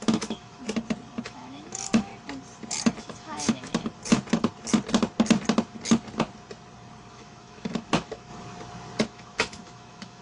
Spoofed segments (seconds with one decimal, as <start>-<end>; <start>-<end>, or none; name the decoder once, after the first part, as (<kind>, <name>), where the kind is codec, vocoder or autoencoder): 0.0-0.6 (autoencoder, DAC-VAE); 1.2-2.1; 3.0-3.7; 7.1-8.3; 9.0-10.2

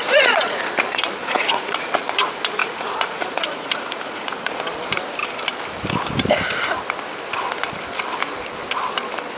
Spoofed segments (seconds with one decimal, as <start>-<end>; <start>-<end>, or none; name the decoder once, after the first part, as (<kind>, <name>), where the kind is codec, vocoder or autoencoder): 0.0-0.7 (vocoder, Vocos); 1.2-1.9; 2.6-4.6

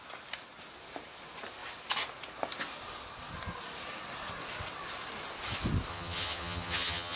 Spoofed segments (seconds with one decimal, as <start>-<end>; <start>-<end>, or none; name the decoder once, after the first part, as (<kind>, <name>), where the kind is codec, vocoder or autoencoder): 5.9-7.2 (vocoder, HiFi-GAN)

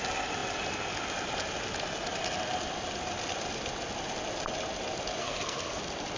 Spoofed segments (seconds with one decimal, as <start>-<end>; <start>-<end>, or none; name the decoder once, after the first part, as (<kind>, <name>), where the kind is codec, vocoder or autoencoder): 5.2-5.8 (codec, SNAC)

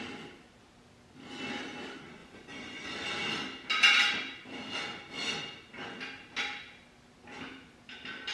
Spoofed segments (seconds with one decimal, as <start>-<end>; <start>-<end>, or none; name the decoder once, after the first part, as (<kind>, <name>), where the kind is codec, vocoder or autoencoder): 2.2-2.9 (vocoder, Vocos)

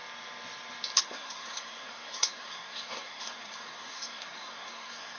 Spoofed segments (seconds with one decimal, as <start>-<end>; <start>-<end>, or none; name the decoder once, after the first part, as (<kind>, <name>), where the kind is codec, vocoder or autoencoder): 1.0-5.2 (codec, SNAC)